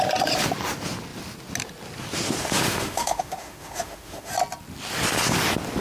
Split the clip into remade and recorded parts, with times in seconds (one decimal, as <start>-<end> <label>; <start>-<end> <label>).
0.0-2.4 recorded; 2.4-4.3 remade; 4.3-5.8 recorded